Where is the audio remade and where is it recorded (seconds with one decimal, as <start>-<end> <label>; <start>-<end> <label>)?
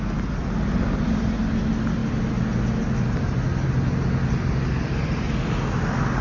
0.0-0.4 recorded; 0.4-0.9 remade; 0.9-6.2 recorded